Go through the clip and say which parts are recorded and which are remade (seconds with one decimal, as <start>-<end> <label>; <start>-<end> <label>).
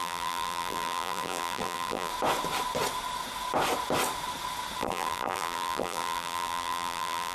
0.0-2.1 remade; 2.1-4.8 recorded; 4.8-7.3 remade